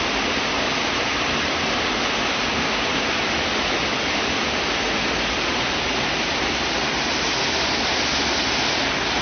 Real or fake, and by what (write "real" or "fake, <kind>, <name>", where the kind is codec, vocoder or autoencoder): real